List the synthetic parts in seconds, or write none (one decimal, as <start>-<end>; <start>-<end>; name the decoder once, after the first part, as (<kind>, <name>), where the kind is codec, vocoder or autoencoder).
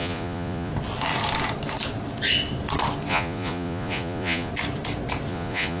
0.0-0.7 (vocoder, Vocos); 3.1-4.5; 5.3-5.8